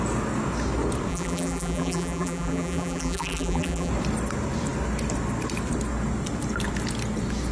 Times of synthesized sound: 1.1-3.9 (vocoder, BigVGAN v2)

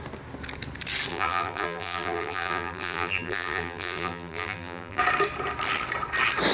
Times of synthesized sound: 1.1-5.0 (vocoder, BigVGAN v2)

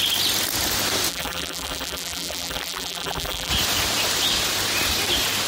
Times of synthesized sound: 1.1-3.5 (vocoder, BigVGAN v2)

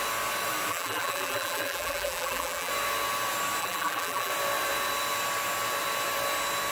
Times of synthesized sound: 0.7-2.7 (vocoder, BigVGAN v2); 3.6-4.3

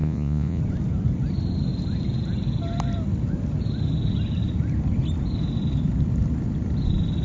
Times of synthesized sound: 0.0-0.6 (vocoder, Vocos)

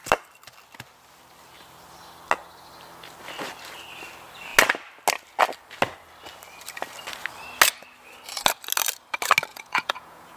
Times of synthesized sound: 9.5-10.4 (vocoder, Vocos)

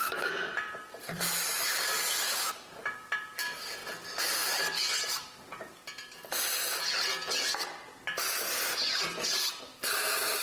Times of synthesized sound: 0.0-3.8 (vocoder, BigVGAN v2); 5.1-5.8; 9.0-10.4